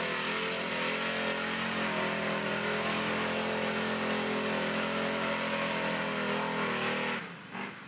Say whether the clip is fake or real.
real